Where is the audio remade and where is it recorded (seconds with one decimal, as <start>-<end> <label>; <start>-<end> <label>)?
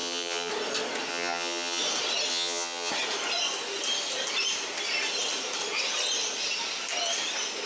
0.0-0.5 remade; 0.5-1.1 recorded; 1.1-1.8 remade; 1.8-2.3 recorded; 2.3-2.9 remade; 2.9-7.7 recorded